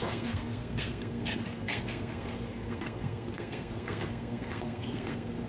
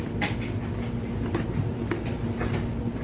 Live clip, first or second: second